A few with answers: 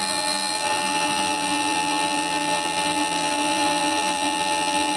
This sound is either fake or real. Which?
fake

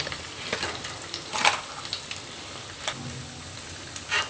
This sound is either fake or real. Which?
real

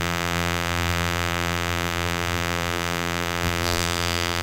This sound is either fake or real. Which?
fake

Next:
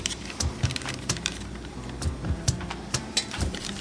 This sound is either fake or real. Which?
fake